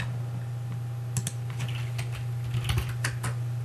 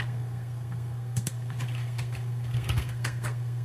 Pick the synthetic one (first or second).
second